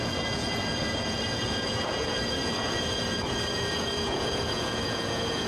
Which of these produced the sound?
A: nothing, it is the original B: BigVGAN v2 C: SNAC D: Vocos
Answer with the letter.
D